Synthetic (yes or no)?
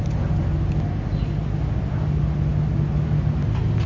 no